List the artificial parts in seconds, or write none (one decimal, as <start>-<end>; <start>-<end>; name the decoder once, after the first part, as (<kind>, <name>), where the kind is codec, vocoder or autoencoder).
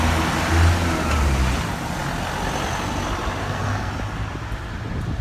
3.4-3.9 (codec, SNAC)